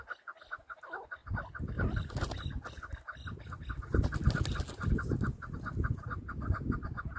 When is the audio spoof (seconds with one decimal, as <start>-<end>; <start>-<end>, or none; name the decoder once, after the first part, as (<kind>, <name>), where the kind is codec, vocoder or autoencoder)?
none